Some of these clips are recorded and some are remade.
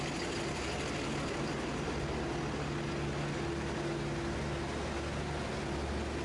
recorded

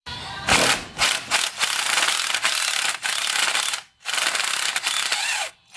remade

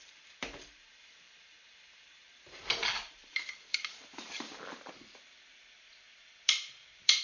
remade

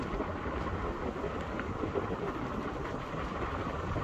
recorded